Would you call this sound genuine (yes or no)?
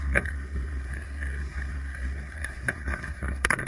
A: no